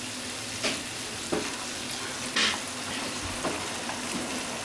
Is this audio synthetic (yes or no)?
no